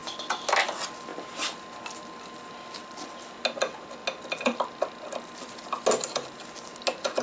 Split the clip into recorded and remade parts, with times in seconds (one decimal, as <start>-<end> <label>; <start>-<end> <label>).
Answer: 0.0-7.2 recorded